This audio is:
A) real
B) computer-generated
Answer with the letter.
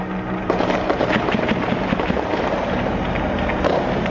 B